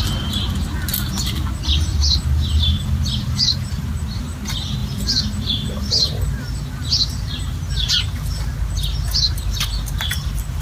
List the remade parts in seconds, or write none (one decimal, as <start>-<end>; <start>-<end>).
1.9-3.9; 4.8-6.2